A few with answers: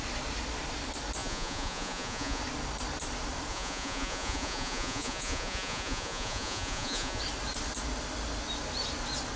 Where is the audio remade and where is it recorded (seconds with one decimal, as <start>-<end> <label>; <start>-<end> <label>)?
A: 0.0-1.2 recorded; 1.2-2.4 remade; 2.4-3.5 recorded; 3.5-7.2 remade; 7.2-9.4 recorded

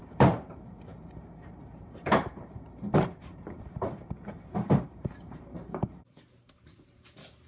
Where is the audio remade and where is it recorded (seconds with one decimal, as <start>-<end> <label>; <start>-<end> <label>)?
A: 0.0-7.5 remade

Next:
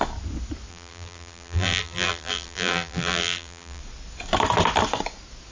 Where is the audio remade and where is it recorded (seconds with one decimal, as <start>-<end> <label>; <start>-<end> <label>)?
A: 0.0-0.7 recorded; 0.7-3.8 remade; 3.8-5.5 recorded

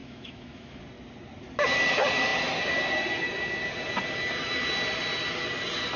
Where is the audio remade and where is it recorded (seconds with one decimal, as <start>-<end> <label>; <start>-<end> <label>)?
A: 0.0-0.8 remade; 0.8-6.0 recorded